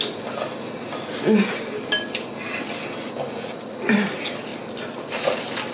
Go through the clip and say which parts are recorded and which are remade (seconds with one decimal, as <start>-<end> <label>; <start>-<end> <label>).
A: 0.0-5.7 recorded